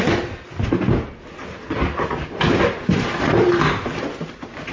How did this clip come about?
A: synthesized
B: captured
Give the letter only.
B